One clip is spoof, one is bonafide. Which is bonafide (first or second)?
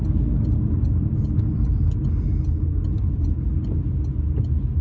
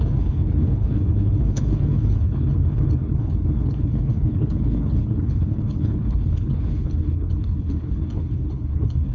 first